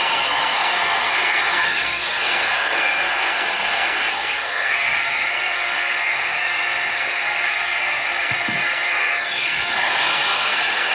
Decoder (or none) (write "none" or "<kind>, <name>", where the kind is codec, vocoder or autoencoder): codec, SNAC